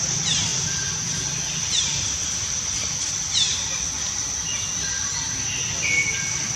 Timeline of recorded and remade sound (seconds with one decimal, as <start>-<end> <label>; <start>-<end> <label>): 0.0-6.6 recorded